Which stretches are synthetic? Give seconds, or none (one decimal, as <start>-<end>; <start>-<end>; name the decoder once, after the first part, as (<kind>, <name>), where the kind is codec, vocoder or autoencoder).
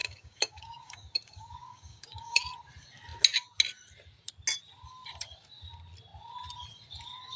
0.0-2.4 (codec, DAC)